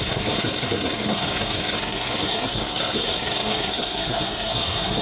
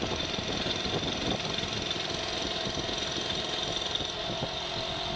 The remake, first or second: first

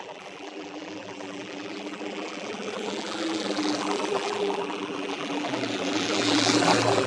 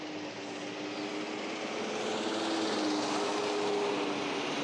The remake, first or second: first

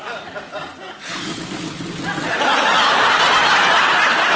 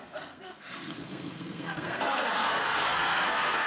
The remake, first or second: second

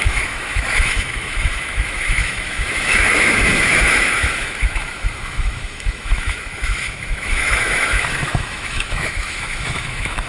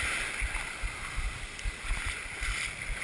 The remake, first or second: first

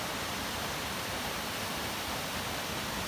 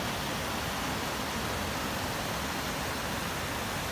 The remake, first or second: first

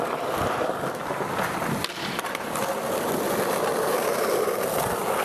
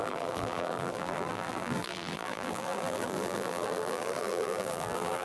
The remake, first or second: second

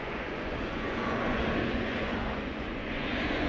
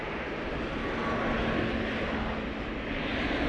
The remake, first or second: first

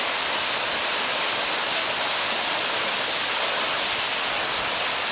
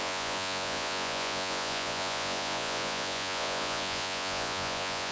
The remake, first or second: second